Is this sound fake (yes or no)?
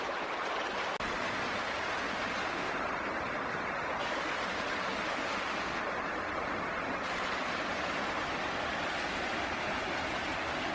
no